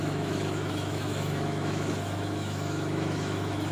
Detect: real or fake fake